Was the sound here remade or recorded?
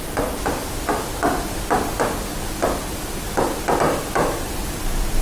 recorded